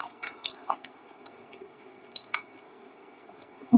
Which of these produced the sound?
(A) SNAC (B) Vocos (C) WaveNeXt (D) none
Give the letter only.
A